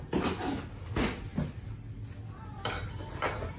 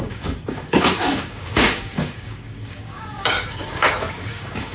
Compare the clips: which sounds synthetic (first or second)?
second